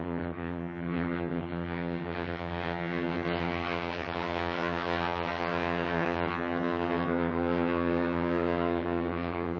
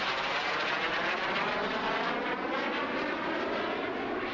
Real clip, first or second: second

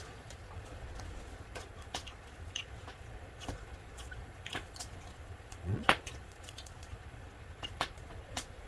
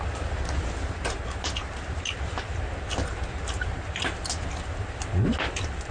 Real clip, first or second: second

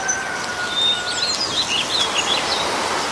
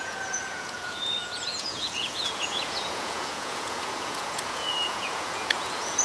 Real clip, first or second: first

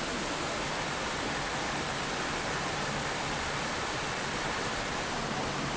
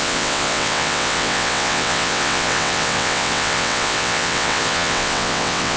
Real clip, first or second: first